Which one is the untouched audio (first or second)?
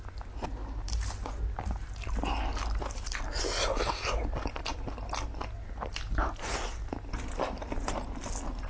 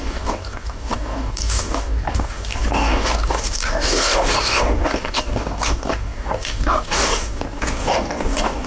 first